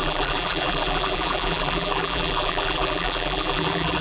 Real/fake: fake